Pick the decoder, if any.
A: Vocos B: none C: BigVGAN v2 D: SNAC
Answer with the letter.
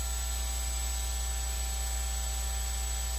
B